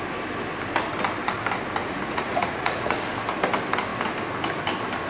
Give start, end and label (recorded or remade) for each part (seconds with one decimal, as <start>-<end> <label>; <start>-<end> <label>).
0.0-1.8 recorded; 1.8-3.0 remade; 3.0-5.1 recorded